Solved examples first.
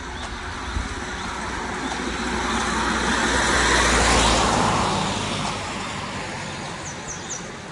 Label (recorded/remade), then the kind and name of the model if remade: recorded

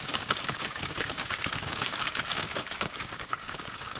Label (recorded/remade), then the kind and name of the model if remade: remade, codec, DAC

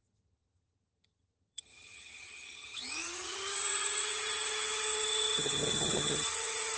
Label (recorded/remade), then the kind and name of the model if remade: remade, vocoder, HiFi-GAN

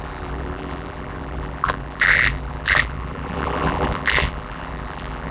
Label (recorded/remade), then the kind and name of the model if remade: remade, vocoder, BigVGAN v2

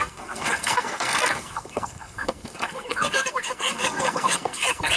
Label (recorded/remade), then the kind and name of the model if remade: remade, codec, SNAC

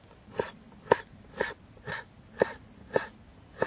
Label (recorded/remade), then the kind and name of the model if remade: recorded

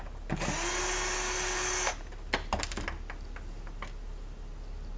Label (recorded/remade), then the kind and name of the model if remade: recorded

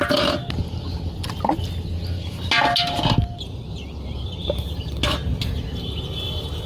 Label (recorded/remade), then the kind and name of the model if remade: recorded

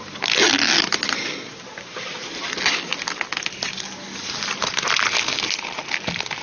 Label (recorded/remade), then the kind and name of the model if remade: recorded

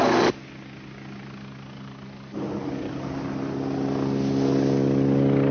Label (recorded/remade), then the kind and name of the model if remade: recorded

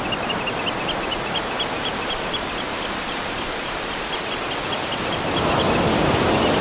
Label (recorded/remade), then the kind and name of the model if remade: recorded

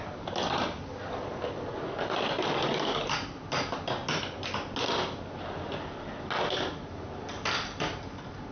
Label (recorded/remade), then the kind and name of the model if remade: recorded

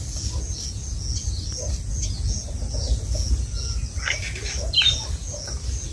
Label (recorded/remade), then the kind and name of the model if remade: recorded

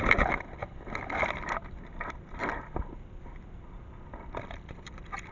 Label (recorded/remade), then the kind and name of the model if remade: recorded